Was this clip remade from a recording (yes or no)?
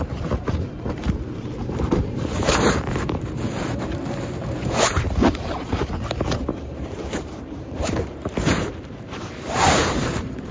yes